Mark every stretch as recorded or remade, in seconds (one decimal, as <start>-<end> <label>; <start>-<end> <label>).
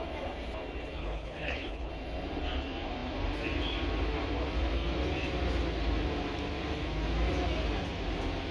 0.0-1.0 recorded; 1.0-1.9 remade; 1.9-8.5 recorded